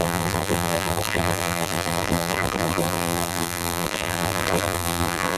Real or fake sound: fake